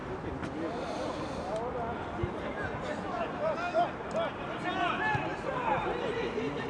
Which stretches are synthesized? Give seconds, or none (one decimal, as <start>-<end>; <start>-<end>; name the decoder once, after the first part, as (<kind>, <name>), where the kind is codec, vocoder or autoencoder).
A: none